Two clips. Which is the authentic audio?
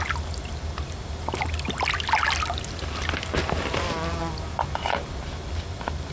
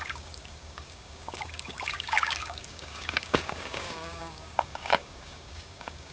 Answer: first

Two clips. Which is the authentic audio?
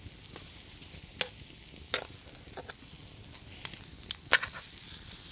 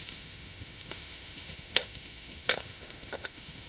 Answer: first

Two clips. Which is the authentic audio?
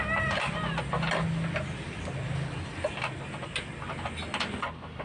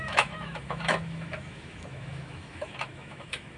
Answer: first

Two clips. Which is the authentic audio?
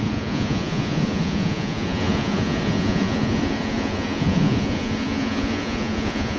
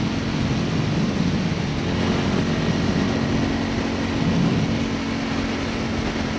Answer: second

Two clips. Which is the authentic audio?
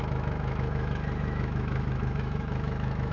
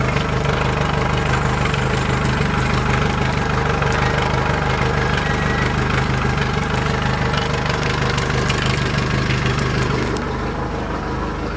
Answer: second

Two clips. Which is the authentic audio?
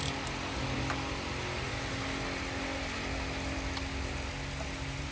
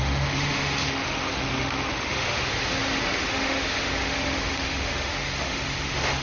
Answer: first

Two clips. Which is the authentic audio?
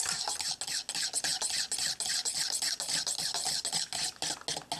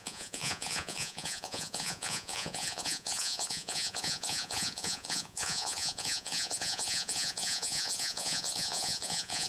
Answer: first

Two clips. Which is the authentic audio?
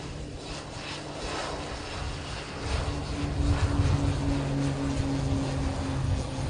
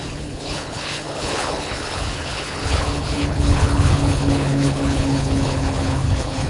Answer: first